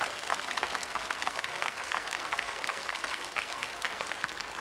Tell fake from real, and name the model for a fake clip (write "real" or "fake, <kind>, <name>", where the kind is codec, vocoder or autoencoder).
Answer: fake, codec, SNAC